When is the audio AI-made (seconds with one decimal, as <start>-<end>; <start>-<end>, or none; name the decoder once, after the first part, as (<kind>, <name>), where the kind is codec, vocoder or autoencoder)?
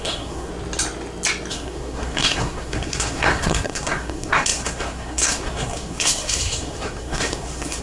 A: 0.0-0.5 (codec, SNAC); 1.5-7.8